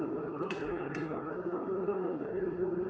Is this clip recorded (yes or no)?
no